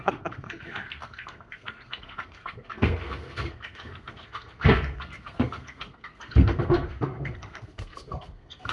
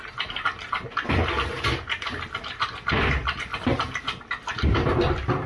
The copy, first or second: first